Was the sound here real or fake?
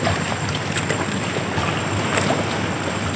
real